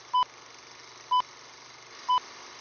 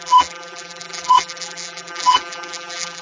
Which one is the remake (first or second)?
second